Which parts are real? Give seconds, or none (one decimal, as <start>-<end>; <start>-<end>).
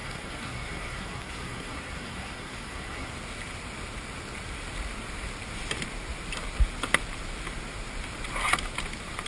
3.1-9.3